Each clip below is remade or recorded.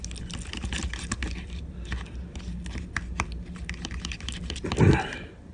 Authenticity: recorded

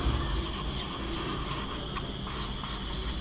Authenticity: recorded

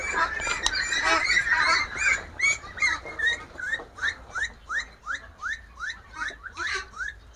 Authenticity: recorded